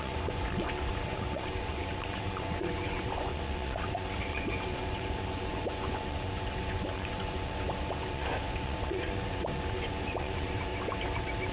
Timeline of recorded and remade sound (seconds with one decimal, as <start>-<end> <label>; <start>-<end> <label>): 0.0-10.7 remade; 10.7-11.5 recorded